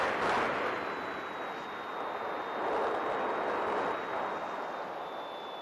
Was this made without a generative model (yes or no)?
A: yes